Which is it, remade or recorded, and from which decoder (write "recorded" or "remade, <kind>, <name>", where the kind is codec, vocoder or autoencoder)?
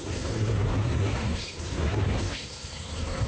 remade, codec, SNAC